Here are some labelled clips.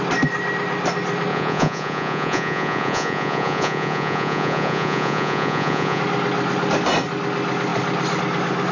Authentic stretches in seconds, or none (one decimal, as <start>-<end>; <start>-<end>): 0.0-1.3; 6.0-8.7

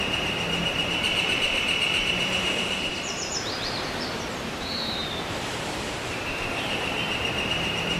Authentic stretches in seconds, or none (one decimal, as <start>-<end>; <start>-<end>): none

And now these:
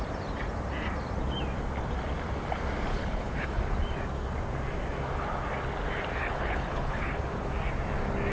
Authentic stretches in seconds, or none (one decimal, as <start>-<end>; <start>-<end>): 0.0-2.9; 3.6-6.2; 7.2-8.3

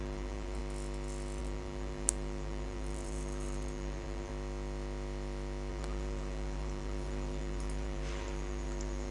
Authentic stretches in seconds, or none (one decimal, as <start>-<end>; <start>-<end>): 0.6-1.4; 4.3-5.7

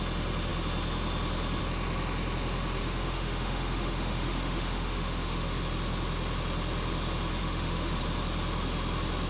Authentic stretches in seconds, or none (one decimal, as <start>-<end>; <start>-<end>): 0.0-2.8; 5.6-7.4; 8.0-9.3

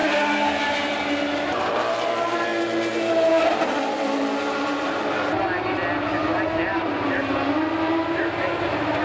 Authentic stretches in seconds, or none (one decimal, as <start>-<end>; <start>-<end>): 0.0-9.0